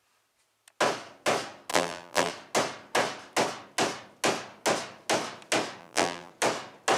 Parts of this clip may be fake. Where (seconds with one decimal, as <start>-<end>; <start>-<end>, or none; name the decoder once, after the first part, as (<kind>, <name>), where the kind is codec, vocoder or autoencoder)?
1.7-2.3 (vocoder, BigVGAN v2); 5.8-6.3